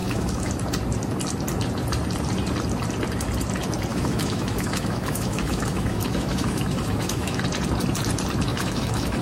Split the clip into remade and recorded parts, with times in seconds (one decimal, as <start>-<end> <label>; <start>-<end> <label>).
0.0-0.5 remade; 0.5-3.9 recorded; 3.9-7.4 remade; 7.4-8.5 recorded; 8.5-9.2 remade